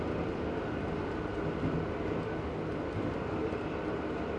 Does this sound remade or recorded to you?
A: recorded